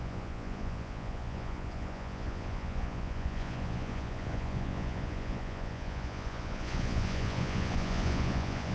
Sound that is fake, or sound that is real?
fake